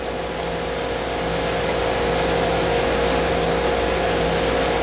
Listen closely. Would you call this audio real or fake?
real